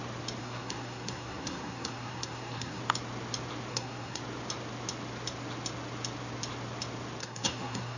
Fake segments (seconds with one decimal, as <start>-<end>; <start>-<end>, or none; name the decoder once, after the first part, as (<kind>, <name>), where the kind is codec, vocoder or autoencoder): 0.4-2.8 (codec, SNAC); 3.7-4.2; 7.2-8.0

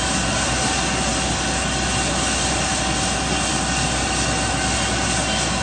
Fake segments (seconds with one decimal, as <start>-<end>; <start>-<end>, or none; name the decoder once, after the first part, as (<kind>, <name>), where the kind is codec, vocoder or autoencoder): none

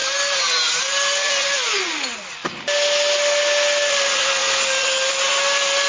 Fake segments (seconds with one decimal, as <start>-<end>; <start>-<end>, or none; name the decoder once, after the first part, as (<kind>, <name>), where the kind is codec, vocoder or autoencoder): none

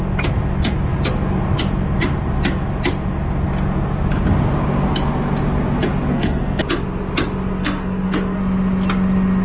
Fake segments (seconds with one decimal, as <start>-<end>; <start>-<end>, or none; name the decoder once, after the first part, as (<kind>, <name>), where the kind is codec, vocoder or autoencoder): 6.1-6.6 (codec, SNAC); 7.6-8.4

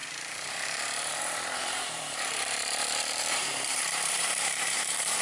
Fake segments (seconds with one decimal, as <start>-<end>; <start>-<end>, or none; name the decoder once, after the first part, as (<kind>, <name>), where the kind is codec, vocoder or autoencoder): 0.0-5.2 (vocoder, BigVGAN v2)

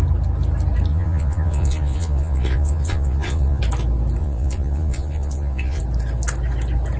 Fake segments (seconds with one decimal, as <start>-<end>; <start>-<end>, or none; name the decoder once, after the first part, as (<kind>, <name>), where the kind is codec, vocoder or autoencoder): 0.9-3.6 (vocoder, Vocos); 4.2-5.8

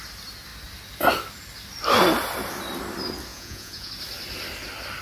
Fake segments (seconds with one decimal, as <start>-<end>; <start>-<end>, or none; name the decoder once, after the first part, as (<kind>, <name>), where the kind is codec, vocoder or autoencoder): 3.3-3.9 (vocoder, Vocos)